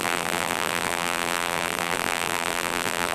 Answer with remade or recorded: remade